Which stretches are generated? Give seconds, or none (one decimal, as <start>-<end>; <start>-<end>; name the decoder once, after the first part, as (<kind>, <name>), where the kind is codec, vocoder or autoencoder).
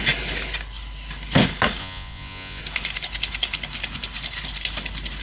1.8-2.6 (vocoder, Vocos)